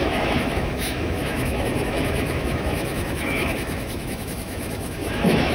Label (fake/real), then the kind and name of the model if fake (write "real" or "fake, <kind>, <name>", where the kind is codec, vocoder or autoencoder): fake, autoencoder, DAC-VAE